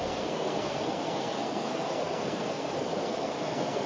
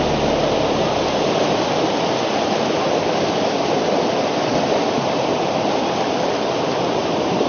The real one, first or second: second